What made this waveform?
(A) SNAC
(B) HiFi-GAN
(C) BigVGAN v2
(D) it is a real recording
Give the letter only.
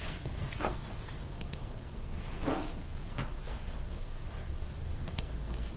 A